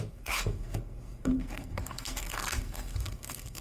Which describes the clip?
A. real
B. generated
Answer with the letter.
B